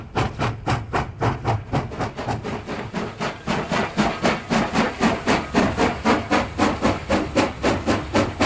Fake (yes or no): no